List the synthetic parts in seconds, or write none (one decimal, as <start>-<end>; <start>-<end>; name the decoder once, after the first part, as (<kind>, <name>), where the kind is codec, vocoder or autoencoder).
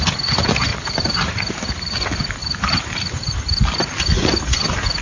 0.7-1.7 (vocoder, BigVGAN v2); 2.4-3.3